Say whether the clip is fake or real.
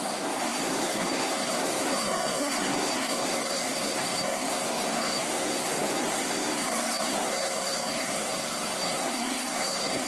fake